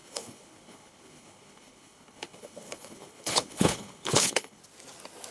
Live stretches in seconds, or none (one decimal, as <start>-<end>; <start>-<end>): 4.6-5.3